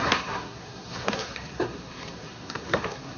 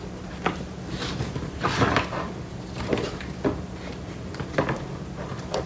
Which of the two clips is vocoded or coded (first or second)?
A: first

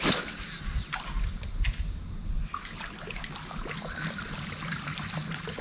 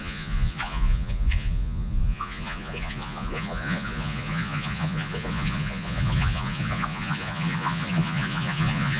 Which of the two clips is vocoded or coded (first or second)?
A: second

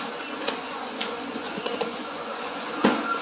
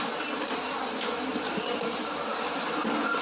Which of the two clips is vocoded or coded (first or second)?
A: first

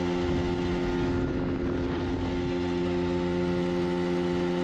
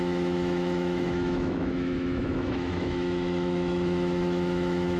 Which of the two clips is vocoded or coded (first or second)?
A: second